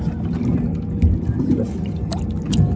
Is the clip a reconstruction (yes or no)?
no